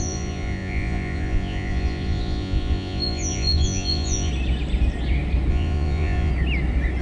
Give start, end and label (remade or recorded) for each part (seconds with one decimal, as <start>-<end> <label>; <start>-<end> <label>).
0.0-4.3 remade; 4.3-5.5 recorded; 5.5-6.3 remade; 6.3-7.0 recorded